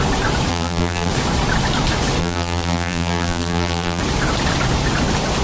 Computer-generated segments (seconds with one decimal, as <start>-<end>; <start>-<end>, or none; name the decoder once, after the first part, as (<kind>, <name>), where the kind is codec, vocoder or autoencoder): 0.5-1.1 (vocoder, BigVGAN v2); 2.2-4.0